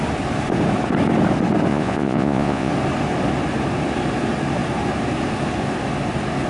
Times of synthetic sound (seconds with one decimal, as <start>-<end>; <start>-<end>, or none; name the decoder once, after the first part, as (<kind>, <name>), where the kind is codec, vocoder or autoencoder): 1.7-2.7 (vocoder, Vocos)